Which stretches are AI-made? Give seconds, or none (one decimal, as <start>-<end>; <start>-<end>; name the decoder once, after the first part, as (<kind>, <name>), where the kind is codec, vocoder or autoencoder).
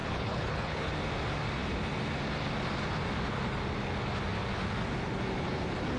0.0-0.9 (codec, HILCodec)